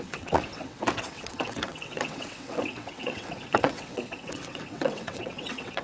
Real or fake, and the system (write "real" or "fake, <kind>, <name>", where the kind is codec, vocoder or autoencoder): fake, vocoder, WaveNeXt